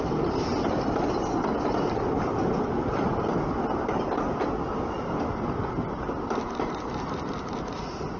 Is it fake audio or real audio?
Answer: real